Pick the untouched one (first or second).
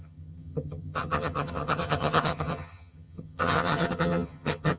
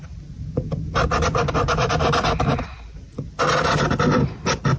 second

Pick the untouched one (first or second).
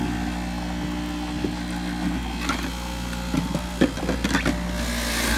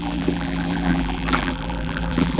first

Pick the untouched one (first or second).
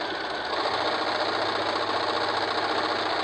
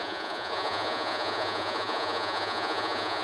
first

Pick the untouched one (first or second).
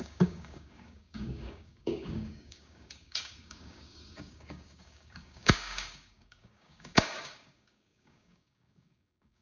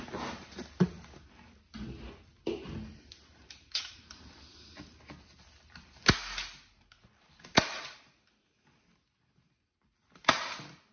second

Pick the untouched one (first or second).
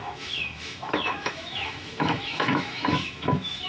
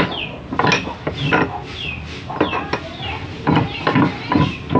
second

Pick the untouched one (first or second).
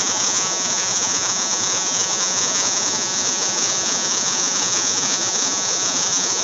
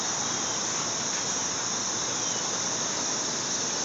second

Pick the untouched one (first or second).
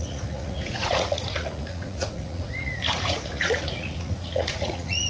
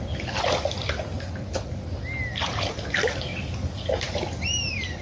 second